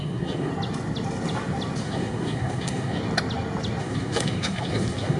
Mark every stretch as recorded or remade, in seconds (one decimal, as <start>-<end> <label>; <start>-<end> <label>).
0.0-0.5 remade; 0.5-1.8 recorded; 1.8-3.0 remade; 3.0-3.8 recorded; 3.8-5.2 remade